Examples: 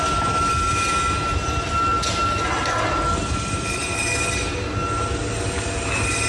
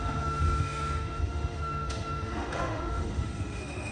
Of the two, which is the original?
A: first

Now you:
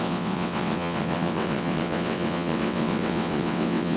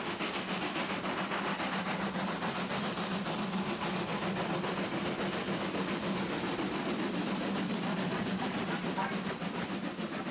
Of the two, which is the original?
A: second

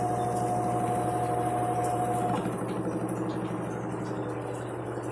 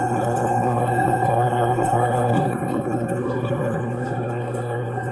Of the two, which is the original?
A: first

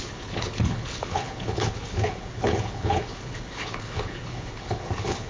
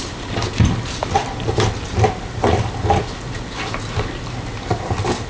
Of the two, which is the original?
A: second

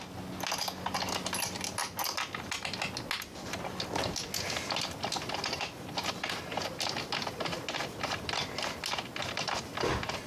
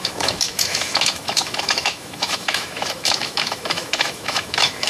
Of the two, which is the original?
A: first